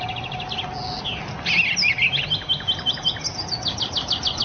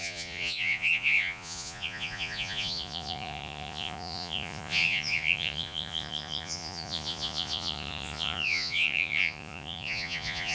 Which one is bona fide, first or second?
first